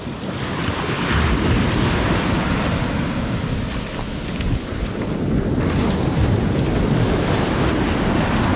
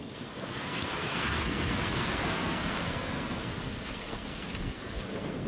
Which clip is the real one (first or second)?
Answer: first